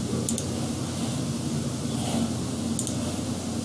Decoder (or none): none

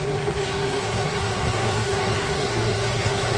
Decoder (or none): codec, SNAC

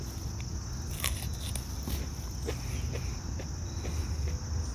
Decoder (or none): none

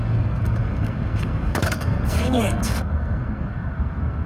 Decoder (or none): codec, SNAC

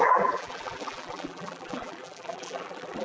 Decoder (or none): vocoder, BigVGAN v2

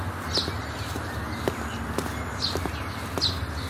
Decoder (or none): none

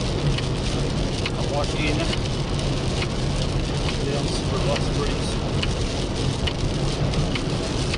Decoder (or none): none